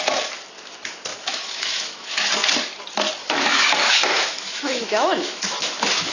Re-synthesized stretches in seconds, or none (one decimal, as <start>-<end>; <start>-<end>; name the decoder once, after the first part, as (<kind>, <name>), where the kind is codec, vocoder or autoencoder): 1.1-2.3 (autoencoder, DAC-VAE); 3.2-6.1